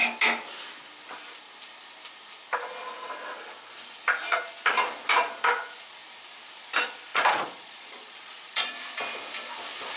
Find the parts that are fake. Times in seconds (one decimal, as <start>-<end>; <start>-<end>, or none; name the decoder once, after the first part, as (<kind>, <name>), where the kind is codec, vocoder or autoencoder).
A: 7.1-8.7 (vocoder, Vocos)

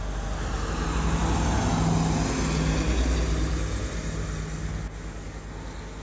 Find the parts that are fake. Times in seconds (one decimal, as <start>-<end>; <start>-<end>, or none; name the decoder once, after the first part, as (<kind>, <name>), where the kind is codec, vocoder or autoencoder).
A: none

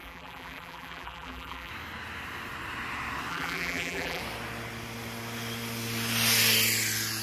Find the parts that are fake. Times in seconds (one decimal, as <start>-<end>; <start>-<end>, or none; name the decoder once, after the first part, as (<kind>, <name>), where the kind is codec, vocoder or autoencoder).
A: 0.0-1.7 (vocoder, BigVGAN v2); 3.3-4.2

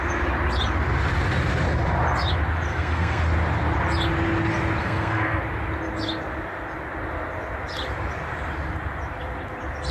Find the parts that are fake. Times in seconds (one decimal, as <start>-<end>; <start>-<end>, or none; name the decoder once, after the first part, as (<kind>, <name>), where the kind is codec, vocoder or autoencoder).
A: 2.7-3.2 (codec, SNAC); 4.8-5.4

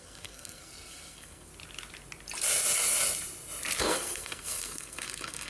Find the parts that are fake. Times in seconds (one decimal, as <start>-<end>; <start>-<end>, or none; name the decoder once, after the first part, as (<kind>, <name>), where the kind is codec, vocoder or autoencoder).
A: 0.0-1.5 (codec, SNAC); 3.8-5.5

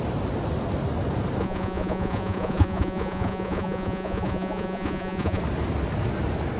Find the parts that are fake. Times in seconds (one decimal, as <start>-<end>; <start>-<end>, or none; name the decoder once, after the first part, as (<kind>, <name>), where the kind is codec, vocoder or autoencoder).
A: 1.4-5.4 (vocoder, Vocos)